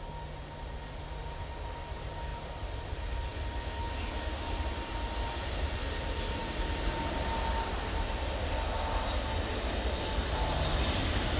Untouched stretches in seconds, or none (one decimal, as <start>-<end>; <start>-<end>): 0.0-11.4